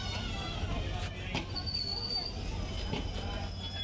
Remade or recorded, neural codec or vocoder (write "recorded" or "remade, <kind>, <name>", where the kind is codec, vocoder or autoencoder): recorded